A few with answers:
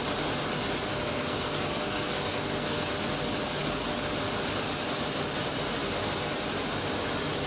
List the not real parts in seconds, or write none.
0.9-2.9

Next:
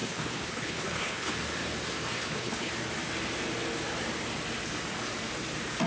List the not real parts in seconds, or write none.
0.0-1.3; 2.2-2.7

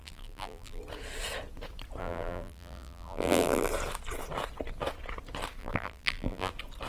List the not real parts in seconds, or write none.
0.0-0.8; 2.0-3.7; 5.6-6.5

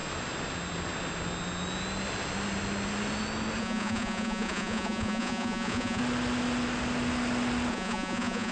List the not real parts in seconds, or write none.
3.6-6.0; 7.7-8.5

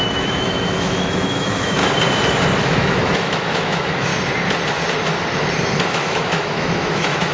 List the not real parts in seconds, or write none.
0.0-1.8; 2.6-4.1; 5.9-7.3